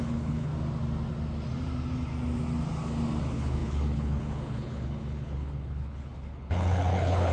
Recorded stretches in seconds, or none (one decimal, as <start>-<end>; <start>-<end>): 0.5-3.2